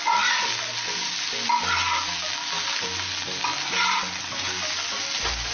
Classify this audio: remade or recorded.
recorded